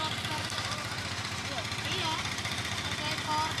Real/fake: real